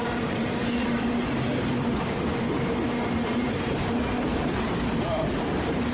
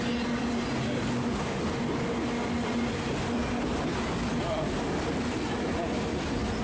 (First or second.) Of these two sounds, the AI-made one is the first